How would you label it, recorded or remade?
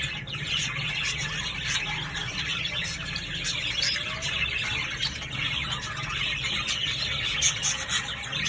recorded